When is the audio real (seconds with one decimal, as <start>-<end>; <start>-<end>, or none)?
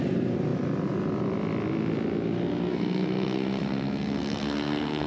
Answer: 0.0-2.7